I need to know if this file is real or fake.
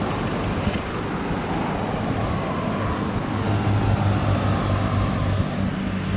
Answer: real